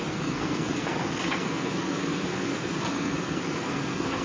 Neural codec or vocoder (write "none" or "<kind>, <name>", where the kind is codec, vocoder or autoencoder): codec, SNAC